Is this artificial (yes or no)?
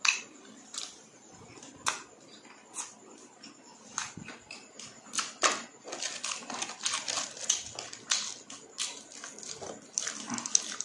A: no